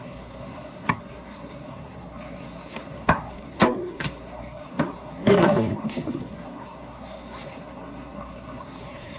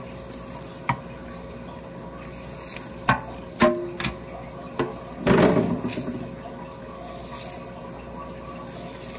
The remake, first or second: first